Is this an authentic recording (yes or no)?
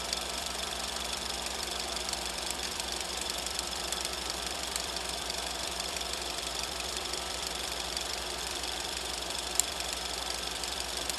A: no